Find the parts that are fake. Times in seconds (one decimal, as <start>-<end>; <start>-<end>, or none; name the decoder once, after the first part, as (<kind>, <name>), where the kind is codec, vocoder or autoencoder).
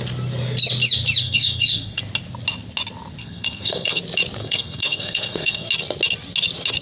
1.2-2.0 (codec, SNAC); 3.2-4.0; 4.4-5.7